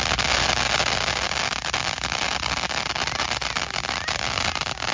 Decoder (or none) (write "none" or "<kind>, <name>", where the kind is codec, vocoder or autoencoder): none